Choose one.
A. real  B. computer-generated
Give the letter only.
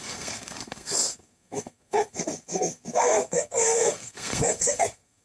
B